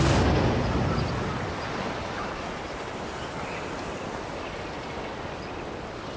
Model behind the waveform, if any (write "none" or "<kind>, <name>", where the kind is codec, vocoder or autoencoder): none